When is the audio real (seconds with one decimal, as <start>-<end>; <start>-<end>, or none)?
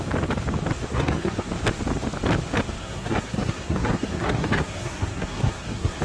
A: 0.0-0.9; 1.5-2.8